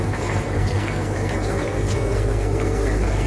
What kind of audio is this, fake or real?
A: fake